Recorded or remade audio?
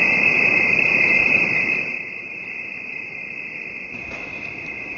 remade